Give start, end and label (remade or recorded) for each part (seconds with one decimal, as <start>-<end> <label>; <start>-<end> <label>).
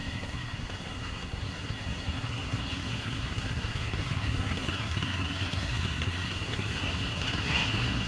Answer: 0.0-8.1 remade